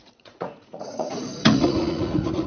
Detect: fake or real fake